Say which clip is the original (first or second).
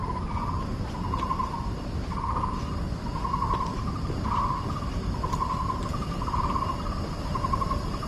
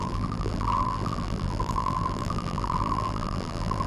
first